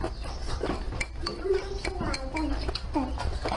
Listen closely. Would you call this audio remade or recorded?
recorded